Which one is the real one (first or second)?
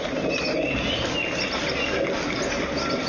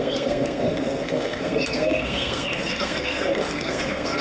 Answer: first